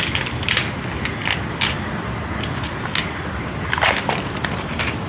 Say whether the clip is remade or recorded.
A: recorded